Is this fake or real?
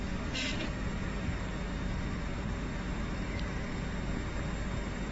real